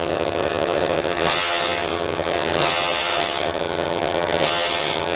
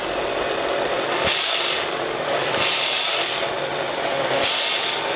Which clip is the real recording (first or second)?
second